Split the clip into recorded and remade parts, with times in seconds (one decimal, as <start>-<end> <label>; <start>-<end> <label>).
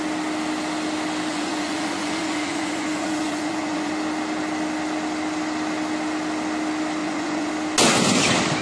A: 0.0-1.3 recorded; 1.3-3.9 remade; 3.9-7.0 recorded; 7.0-7.5 remade; 7.5-8.6 recorded